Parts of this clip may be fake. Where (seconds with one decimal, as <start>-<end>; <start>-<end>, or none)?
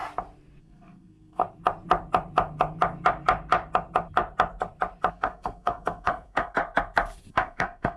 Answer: 0.6-1.4; 5.1-6.6; 7.3-8.0